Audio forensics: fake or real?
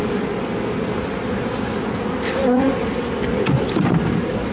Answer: real